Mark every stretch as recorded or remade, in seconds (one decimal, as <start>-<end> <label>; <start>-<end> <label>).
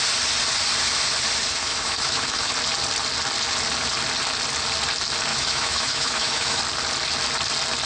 0.0-1.6 recorded; 1.6-2.5 remade; 2.5-5.3 recorded; 5.3-6.6 remade; 6.6-7.9 recorded